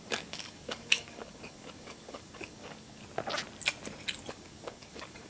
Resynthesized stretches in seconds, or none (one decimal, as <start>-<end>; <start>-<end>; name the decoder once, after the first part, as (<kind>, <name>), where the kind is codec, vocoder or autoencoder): 0.0-3.0 (codec, DAC); 4.3-5.3